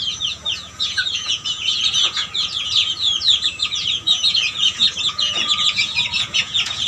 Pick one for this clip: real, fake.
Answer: fake